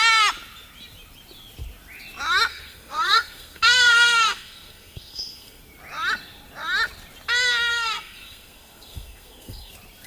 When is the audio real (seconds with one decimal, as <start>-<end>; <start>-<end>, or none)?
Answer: 0.0-2.5; 5.6-7.7; 9.7-10.1